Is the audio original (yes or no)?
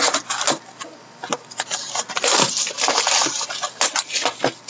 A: yes